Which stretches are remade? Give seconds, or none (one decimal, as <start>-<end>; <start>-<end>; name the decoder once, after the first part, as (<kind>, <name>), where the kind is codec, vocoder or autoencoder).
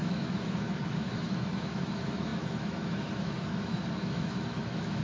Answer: 0.0-5.0 (autoencoder, DAC-VAE)